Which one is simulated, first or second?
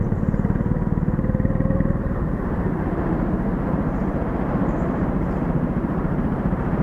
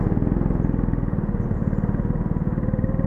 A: first